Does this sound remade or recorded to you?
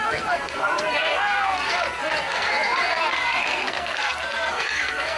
remade